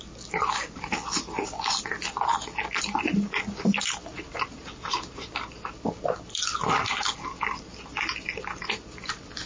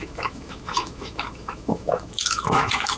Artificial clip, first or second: second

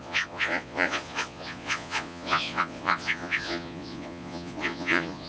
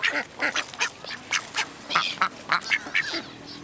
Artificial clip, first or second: first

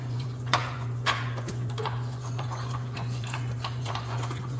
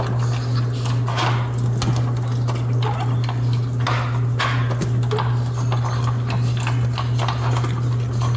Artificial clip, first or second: first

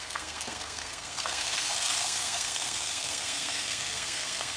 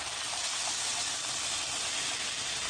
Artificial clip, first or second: first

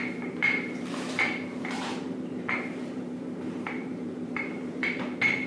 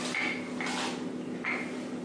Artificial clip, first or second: first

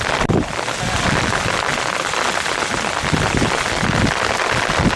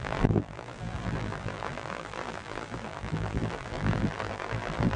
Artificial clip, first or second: second